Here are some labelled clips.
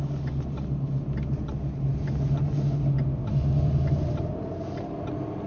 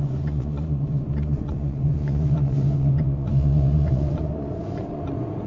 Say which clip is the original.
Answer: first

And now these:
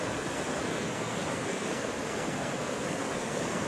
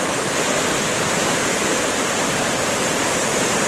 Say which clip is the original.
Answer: second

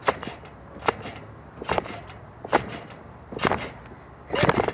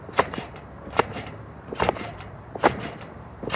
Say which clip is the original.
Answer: first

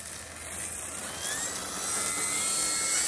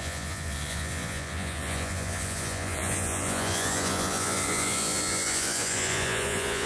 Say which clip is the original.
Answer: first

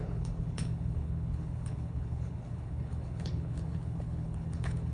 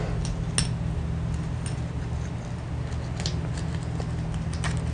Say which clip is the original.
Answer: second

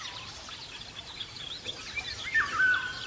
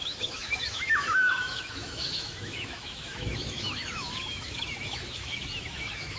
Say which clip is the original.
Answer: first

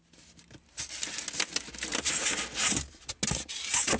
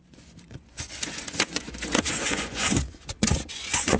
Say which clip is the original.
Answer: first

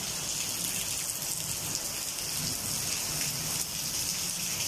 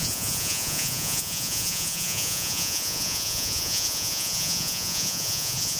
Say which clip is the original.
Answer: first